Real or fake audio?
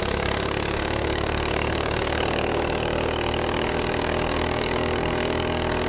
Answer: fake